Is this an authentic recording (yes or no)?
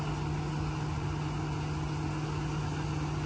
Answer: yes